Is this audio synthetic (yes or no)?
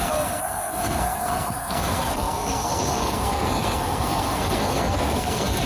yes